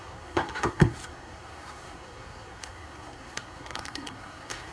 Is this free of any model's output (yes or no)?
no